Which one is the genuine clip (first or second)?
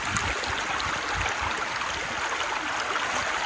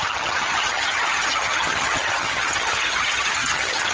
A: first